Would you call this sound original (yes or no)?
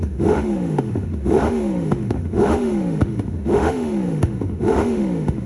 no